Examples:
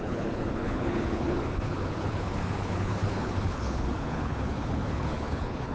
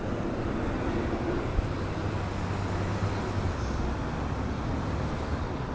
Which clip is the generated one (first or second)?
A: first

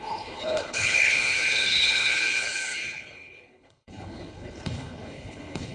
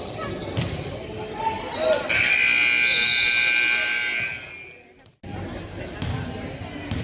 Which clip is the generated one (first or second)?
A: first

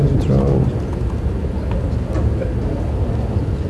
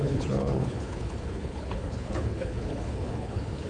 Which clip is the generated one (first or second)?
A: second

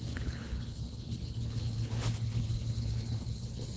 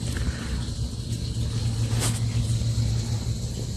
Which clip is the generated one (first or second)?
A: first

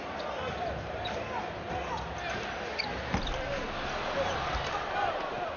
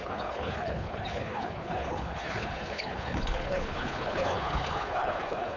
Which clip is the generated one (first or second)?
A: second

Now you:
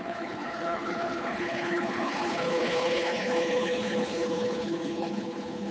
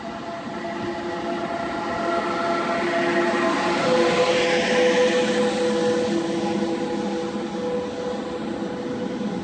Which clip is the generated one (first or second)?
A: first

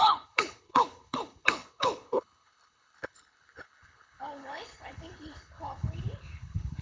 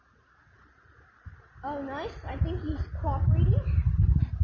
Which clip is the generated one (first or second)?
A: first